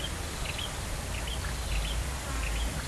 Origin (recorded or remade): recorded